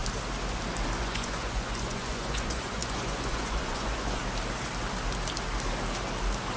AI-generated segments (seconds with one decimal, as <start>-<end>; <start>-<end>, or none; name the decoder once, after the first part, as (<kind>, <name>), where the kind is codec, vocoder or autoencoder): 1.0-4.2 (vocoder, Vocos)